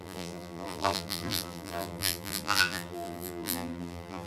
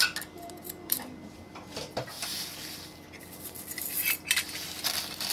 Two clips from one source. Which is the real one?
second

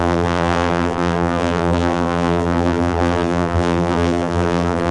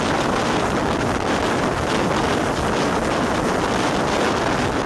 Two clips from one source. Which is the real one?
second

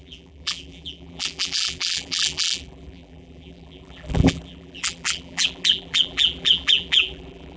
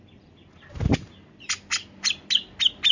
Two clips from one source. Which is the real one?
second